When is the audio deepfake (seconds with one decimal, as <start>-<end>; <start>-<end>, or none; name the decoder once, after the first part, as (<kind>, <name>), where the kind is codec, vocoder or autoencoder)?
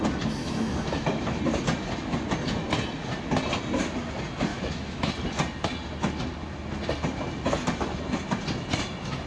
0.4-1.4 (autoencoder, DAC-VAE); 4.5-5.1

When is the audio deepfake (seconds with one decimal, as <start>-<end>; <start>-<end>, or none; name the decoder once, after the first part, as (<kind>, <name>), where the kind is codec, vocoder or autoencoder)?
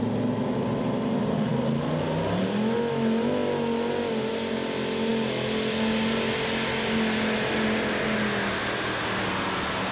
none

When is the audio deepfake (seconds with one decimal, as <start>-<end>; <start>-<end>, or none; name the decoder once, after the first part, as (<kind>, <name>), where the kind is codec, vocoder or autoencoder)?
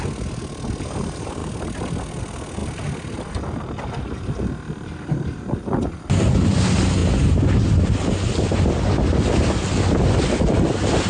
none